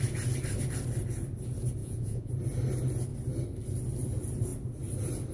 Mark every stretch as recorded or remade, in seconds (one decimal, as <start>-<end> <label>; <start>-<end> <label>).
0.0-1.8 recorded; 1.8-2.3 remade; 2.3-5.3 recorded